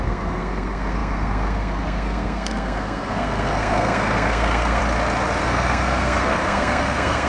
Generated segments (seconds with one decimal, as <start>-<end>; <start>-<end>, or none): 0.0-4.8; 5.4-7.3